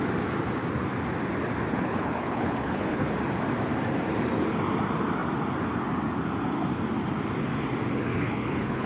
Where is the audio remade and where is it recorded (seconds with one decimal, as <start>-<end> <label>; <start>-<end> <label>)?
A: 0.0-1.7 recorded; 1.7-3.1 remade; 3.1-8.1 recorded; 8.1-8.9 remade